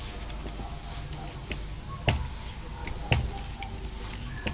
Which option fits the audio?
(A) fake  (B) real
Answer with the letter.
B